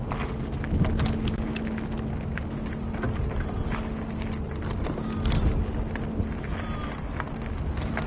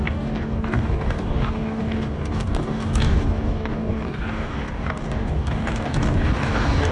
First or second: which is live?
first